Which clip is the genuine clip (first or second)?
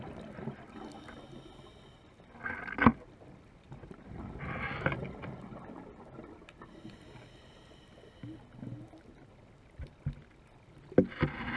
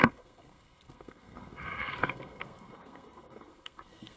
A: first